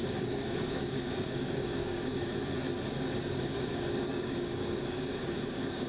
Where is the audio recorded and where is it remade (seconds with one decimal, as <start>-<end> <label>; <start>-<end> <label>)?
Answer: 0.0-2.3 remade; 2.3-3.2 recorded; 3.2-5.9 remade